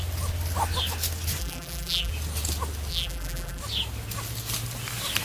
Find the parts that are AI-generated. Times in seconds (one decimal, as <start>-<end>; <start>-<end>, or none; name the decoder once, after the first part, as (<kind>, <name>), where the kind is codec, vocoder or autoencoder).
1.4-2.1 (vocoder, BigVGAN v2); 2.9-3.6